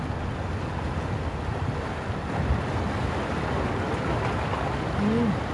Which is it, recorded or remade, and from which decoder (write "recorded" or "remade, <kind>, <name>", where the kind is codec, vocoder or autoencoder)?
recorded